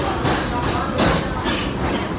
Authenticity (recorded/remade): recorded